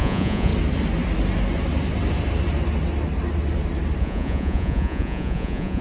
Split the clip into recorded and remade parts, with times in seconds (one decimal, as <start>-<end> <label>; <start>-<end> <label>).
0.0-0.5 remade; 0.5-4.0 recorded; 4.0-5.8 remade